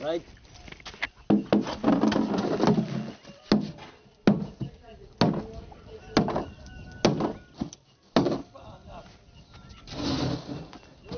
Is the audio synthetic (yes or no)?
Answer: no